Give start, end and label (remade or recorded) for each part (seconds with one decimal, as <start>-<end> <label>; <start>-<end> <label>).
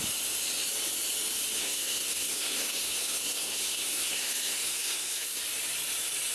0.0-1.6 recorded; 1.6-5.4 remade; 5.4-6.3 recorded